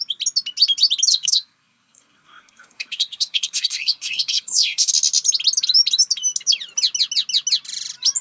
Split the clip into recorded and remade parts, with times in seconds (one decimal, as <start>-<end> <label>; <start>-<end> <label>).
0.0-1.1 recorded; 1.1-4.9 remade; 4.9-8.2 recorded

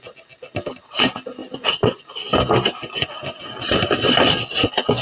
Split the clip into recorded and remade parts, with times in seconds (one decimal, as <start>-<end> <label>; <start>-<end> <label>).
0.0-5.0 recorded

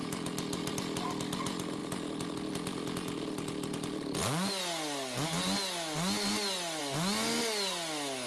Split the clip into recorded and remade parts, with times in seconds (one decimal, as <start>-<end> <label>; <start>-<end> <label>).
0.0-8.3 recorded

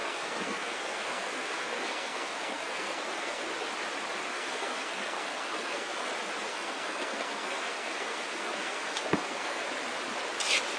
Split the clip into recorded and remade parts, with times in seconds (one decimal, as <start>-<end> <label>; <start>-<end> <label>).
0.0-3.4 remade; 3.4-4.3 recorded; 4.3-6.1 remade; 6.1-6.5 recorded; 6.5-9.6 remade; 9.6-10.8 recorded

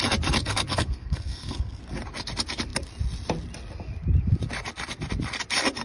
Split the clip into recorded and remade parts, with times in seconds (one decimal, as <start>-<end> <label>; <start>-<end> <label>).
0.0-0.4 recorded; 0.4-1.8 remade; 1.8-5.8 recorded

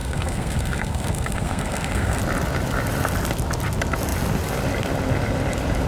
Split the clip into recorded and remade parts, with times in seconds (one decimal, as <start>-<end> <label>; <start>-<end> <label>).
0.0-2.2 remade; 2.2-5.9 recorded

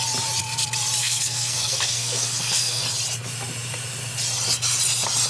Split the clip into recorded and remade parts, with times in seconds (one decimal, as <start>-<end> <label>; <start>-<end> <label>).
0.0-1.0 recorded; 1.0-2.8 remade; 2.8-5.3 recorded

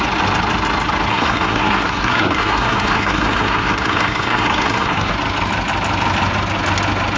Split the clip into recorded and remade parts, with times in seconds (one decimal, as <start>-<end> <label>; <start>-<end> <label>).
0.0-1.1 recorded; 1.1-5.1 remade; 5.1-7.2 recorded